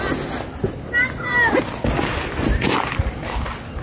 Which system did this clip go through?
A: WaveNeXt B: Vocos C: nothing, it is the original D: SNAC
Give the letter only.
C